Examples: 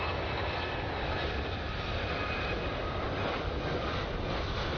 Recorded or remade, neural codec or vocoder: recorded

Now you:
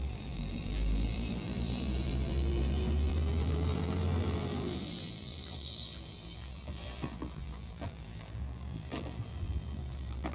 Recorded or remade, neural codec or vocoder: remade, vocoder, BigVGAN v2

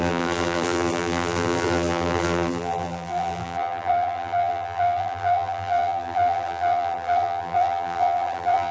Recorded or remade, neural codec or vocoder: remade, vocoder, BigVGAN v2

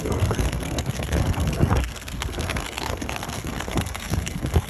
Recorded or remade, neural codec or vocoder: remade, codec, SNAC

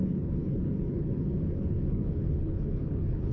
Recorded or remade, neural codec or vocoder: remade, codec, HILCodec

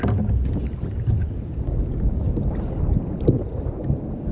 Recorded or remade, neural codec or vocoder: recorded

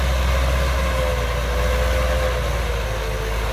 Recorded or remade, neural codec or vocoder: recorded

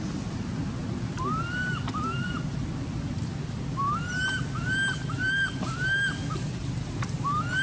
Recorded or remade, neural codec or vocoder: recorded